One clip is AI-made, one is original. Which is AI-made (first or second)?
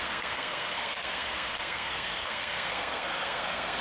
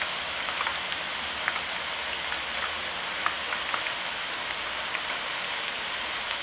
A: first